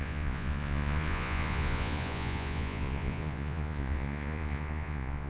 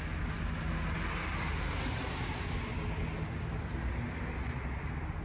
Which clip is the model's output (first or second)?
first